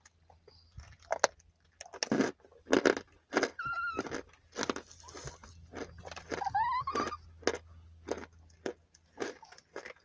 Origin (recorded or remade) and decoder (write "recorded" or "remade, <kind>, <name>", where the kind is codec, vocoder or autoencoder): recorded